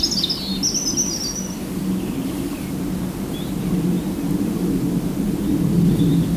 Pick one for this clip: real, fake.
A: real